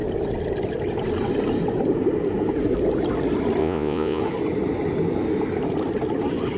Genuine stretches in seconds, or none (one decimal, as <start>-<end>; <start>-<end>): 0.0-3.6; 4.2-6.6